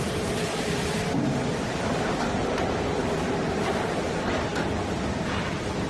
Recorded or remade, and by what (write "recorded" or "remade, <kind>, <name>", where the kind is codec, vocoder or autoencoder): recorded